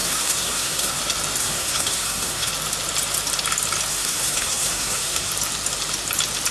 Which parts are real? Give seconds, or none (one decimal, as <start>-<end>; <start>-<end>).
1.0-1.4; 2.5-3.9; 5.3-6.5